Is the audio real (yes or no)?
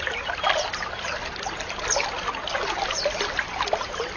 yes